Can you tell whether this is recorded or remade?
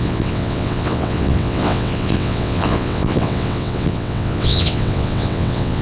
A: remade